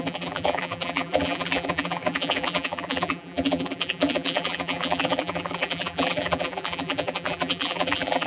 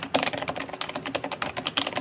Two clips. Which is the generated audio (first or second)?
first